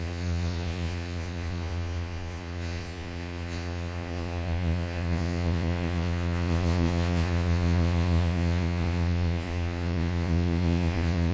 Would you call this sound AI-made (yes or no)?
yes